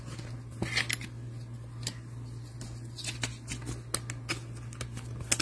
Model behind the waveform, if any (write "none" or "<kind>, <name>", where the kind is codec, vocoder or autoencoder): none